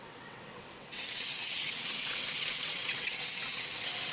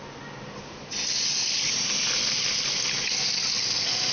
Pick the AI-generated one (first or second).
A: first